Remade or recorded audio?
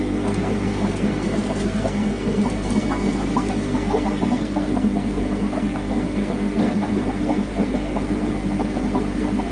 remade